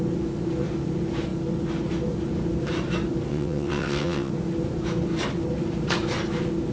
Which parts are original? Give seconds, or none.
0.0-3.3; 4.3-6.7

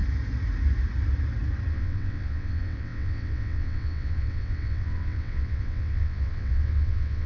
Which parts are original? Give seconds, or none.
0.0-1.7

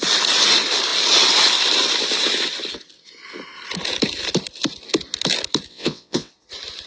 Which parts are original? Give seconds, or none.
0.0-5.7; 6.3-6.9